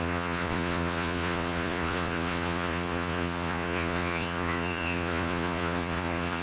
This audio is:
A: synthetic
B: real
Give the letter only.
A